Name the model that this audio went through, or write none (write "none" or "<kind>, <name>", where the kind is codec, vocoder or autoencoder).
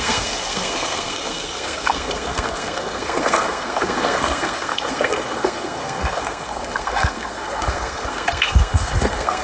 codec, SNAC